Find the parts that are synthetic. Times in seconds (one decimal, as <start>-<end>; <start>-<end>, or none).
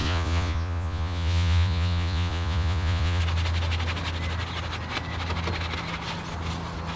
0.0-3.2